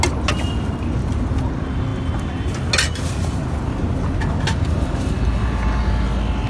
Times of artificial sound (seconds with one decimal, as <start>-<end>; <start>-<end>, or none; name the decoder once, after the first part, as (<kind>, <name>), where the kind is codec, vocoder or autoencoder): 1.0-1.5 (vocoder, BigVGAN v2)